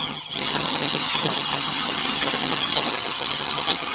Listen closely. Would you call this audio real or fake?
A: fake